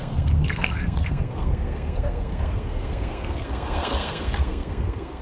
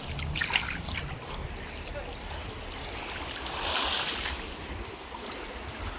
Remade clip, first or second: first